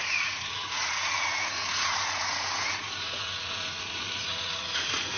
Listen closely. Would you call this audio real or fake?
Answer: fake